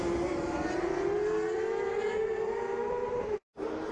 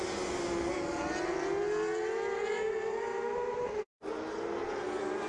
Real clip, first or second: second